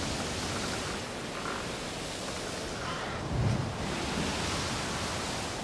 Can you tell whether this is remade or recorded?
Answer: recorded